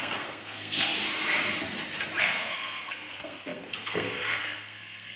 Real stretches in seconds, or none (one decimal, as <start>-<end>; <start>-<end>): 0.9-2.2